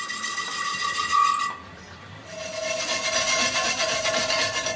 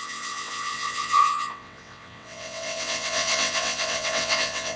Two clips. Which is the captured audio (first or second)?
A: first